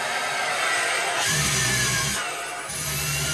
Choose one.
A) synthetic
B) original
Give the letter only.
B